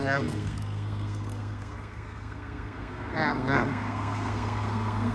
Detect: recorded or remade remade